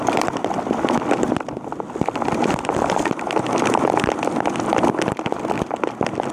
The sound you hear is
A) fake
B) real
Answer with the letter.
B